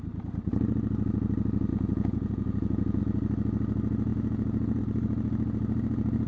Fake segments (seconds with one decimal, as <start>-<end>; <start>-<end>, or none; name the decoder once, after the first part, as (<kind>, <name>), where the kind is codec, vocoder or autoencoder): 1.7-3.0 (vocoder, Vocos); 4.1-4.8